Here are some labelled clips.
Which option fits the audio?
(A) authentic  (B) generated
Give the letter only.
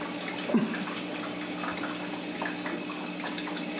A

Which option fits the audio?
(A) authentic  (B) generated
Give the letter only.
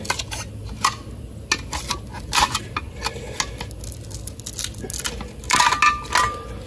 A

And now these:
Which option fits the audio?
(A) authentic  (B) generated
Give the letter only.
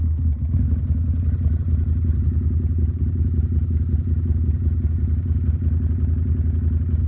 A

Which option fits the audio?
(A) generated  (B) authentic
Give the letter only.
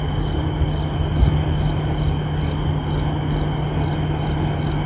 B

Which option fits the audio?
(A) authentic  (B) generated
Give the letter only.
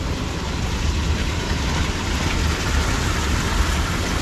A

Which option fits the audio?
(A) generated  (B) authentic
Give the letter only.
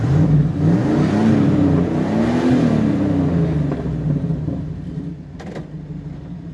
B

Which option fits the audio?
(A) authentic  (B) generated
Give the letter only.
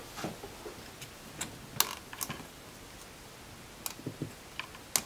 A